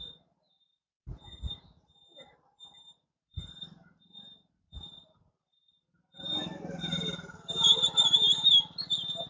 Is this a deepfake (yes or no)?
no